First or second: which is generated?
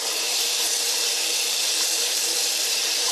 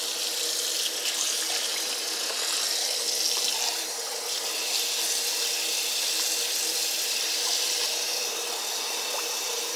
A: first